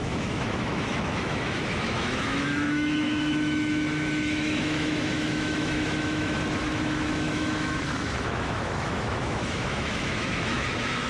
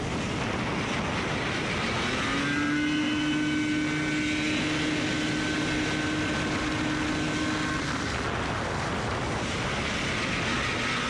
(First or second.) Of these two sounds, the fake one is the first